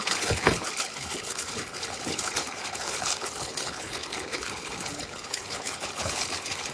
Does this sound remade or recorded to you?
remade